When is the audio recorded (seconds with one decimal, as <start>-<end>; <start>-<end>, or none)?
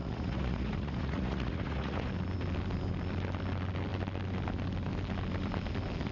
2.1-6.1